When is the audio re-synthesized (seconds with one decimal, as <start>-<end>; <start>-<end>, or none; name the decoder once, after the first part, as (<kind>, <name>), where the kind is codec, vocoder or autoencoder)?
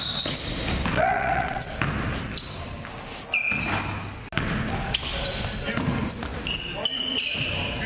0.9-1.7 (vocoder, WaveNeXt)